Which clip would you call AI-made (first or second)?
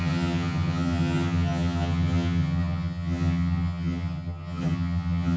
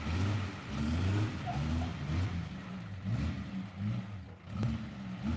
first